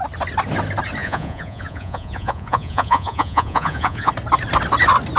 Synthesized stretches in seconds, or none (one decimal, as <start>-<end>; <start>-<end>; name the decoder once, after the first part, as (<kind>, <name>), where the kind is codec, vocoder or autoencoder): 1.0-4.1 (vocoder, Vocos)